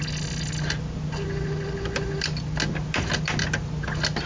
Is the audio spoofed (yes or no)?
no